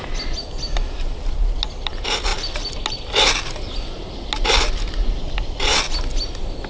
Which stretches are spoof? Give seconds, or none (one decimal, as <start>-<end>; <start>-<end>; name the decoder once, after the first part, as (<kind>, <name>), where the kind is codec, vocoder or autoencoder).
none